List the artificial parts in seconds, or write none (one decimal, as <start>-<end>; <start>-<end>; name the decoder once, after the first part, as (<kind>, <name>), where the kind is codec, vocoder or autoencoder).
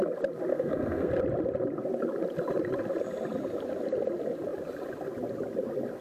0.5-1.1 (codec, SNAC)